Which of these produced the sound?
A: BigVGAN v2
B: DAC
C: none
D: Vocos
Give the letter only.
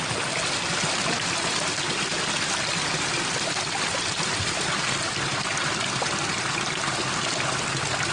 C